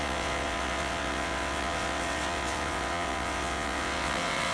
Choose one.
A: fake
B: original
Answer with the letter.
A